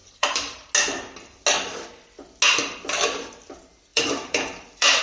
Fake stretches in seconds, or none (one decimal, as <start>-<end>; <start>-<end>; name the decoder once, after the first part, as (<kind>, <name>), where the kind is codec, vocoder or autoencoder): 0.0-0.7 (vocoder, BigVGAN v2); 3.9-5.0